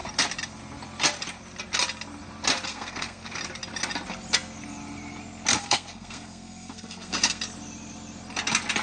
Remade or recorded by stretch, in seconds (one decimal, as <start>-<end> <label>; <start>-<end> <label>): 0.0-2.7 recorded; 2.7-3.4 remade; 3.4-5.5 recorded; 5.5-7.4 remade; 7.4-8.8 recorded